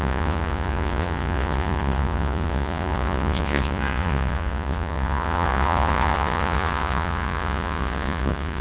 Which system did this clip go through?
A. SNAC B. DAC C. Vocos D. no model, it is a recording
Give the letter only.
C